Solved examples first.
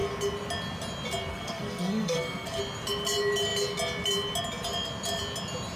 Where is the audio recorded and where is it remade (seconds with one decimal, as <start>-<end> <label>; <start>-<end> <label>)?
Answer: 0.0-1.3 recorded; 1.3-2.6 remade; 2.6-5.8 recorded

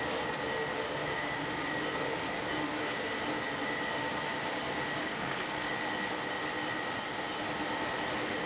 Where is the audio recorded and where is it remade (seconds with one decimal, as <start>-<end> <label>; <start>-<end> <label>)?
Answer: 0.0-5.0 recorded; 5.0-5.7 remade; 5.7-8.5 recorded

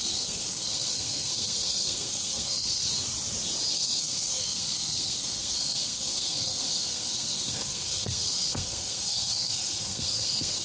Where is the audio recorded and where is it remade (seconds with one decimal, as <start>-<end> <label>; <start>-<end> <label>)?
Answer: 0.0-2.9 remade; 2.9-3.7 recorded; 3.7-10.6 remade

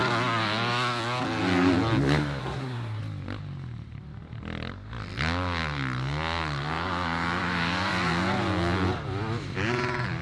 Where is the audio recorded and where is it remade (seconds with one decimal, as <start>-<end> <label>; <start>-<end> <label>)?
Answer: 0.0-2.4 recorded; 2.4-3.0 remade; 3.0-10.2 recorded

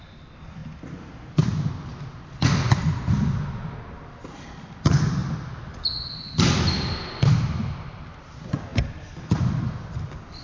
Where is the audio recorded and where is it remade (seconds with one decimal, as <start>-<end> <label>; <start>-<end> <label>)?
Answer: 0.0-10.4 recorded

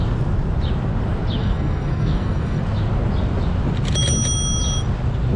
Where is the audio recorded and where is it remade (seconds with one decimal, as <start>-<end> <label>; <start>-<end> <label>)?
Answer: 0.0-1.4 recorded; 1.4-2.6 remade; 2.6-5.4 recorded

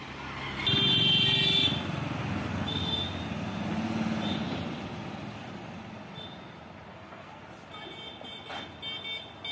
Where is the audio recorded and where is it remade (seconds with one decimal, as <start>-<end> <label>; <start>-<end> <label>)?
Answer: 0.0-6.9 recorded; 6.9-7.4 remade; 7.4-9.5 recorded